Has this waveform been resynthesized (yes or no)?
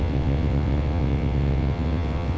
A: yes